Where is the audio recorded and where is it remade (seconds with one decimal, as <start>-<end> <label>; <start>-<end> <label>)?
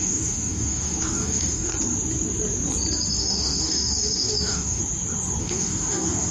0.0-1.7 remade; 1.7-3.2 recorded; 3.2-4.8 remade; 4.8-5.4 recorded; 5.4-6.3 remade